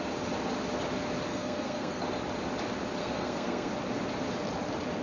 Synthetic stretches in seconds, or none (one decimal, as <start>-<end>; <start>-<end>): 1.3-2.0; 3.0-3.7